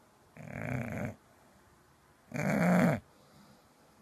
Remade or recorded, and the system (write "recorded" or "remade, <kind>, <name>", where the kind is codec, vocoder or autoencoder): recorded